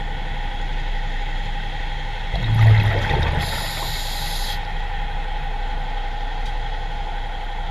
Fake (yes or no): no